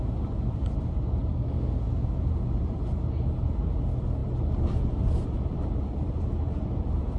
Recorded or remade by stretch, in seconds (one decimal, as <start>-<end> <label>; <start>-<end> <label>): 0.0-1.3 recorded; 1.3-1.8 remade; 1.8-7.2 recorded